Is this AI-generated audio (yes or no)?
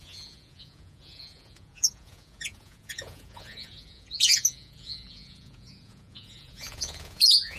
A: yes